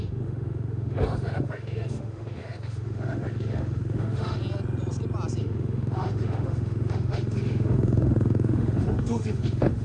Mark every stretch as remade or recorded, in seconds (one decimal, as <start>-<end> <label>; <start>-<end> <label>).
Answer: 0.0-4.4 remade; 4.4-5.4 recorded; 5.4-9.8 remade